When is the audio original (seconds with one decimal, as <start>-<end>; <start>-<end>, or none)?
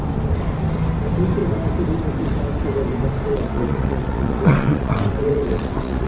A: 0.0-3.3